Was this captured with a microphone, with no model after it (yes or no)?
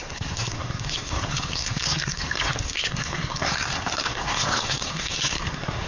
no